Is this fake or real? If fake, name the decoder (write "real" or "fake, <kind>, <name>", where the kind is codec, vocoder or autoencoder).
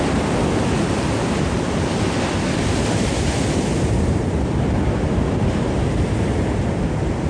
real